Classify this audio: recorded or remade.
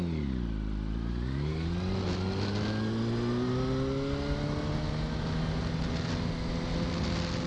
recorded